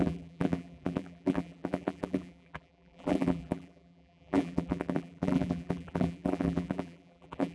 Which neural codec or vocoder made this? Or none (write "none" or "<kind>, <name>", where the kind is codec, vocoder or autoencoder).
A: vocoder, BigVGAN v2